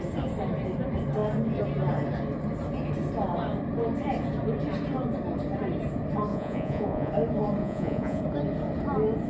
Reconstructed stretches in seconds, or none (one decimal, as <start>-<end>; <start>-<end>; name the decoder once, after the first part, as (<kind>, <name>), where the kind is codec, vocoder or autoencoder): 6.3-7.1 (vocoder, Vocos); 7.6-8.2